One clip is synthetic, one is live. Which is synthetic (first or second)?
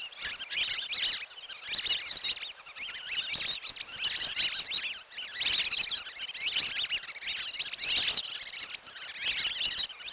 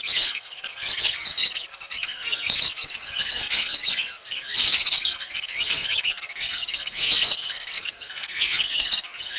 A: second